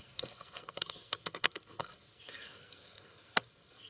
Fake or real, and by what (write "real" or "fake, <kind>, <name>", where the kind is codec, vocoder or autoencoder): fake, codec, SNAC